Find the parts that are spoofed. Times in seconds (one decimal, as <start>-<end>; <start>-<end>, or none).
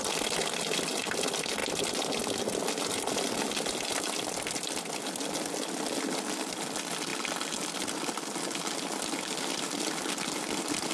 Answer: none